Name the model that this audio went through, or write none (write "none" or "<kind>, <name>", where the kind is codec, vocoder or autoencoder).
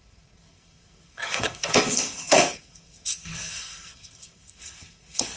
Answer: codec, SNAC